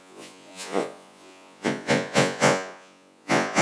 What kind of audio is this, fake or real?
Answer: fake